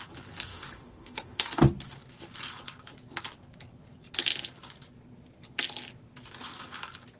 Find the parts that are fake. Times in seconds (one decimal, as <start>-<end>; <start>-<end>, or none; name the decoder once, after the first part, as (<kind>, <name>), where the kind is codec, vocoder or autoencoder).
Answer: 0.5-1.6 (autoencoder, DAC-VAE)